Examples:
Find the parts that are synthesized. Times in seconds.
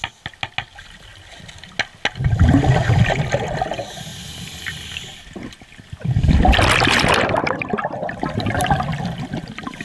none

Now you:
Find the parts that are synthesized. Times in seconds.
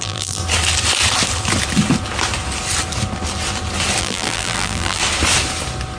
0.0-0.4; 4.0-5.0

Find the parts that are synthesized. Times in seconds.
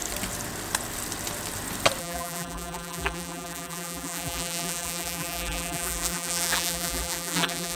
2.0-7.8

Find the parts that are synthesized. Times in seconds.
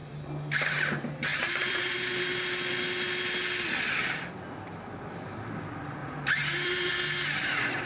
1.3-2.1; 6.0-6.9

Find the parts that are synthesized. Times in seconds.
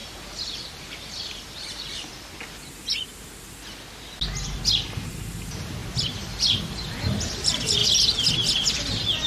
0.0-2.1; 5.0-5.8; 7.2-7.8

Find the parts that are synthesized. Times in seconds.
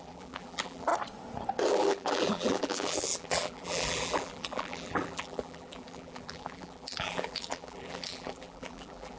0.0-0.9; 1.7-9.2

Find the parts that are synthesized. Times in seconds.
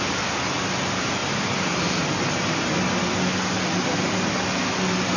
none